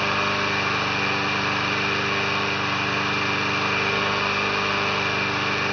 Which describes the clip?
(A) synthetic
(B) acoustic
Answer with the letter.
B